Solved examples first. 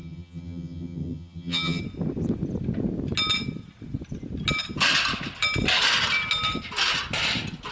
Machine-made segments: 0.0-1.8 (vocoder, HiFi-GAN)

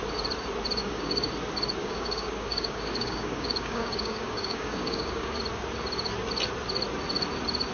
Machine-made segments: 0.8-1.3 (codec, DAC); 1.8-5.4

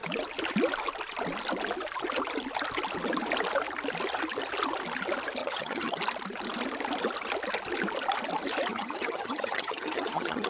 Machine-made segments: 5.4-6.0 (vocoder, HiFi-GAN); 8.7-10.5